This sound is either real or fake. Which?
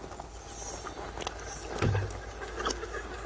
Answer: real